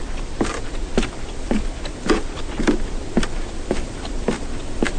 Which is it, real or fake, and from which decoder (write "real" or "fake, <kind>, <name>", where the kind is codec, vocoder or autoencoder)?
real